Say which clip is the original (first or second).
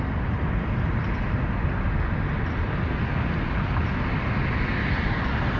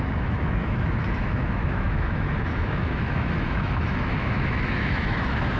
first